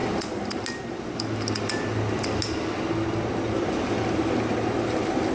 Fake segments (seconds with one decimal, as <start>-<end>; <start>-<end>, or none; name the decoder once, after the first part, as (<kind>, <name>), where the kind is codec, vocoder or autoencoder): none